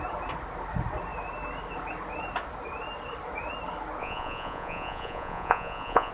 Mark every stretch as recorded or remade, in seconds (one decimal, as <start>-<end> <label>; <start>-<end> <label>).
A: 0.0-4.0 recorded; 4.0-6.1 remade